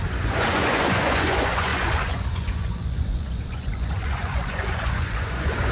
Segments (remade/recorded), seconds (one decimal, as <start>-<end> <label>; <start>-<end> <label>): 0.0-5.7 remade